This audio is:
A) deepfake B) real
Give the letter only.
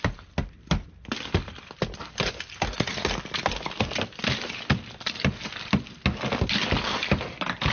B